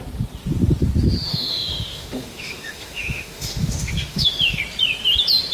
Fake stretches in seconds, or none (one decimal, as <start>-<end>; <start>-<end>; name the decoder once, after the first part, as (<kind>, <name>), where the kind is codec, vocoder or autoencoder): 1.3-4.6 (autoencoder, DAC-VAE)